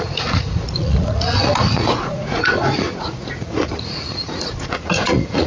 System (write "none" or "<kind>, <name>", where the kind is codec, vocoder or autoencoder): vocoder, Vocos